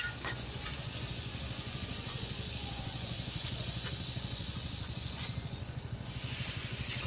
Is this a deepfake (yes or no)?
yes